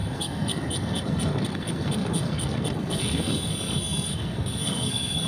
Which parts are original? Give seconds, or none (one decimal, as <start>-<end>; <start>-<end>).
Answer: none